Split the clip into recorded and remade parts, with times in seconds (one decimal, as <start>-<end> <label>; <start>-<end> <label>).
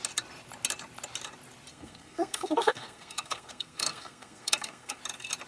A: 0.0-1.7 recorded; 1.7-5.0 remade; 5.0-5.5 recorded